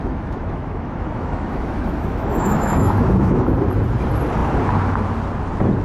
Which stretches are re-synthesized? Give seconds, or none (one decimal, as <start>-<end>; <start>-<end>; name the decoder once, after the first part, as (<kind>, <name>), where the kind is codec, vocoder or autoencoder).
0.0-3.5 (autoencoder, DAC-VAE)